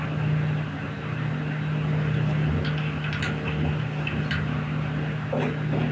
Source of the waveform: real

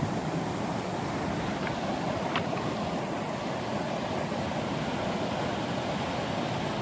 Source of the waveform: real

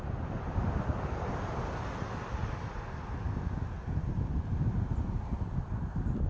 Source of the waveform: real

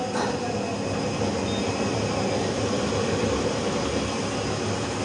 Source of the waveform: real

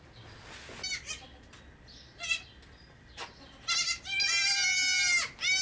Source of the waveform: real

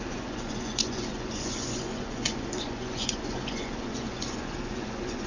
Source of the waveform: fake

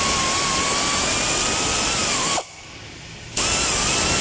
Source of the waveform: real